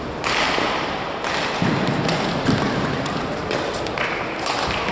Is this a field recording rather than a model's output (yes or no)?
yes